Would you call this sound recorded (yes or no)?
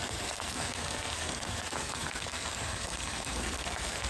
no